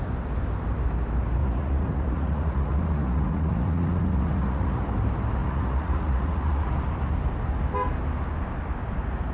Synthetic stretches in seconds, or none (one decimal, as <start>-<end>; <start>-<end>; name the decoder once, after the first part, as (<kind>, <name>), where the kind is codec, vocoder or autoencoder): 1.4-4.8 (vocoder, Vocos); 5.4-6.7